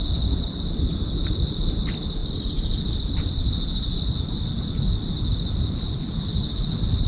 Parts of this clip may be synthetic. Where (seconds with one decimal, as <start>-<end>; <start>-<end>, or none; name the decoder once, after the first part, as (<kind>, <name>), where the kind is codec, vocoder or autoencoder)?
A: none